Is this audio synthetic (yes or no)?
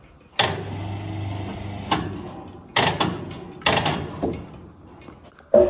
no